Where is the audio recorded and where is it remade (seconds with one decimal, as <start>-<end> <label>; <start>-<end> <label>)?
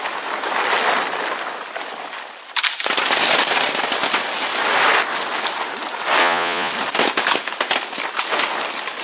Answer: 0.0-6.2 recorded; 6.2-6.7 remade; 6.7-9.0 recorded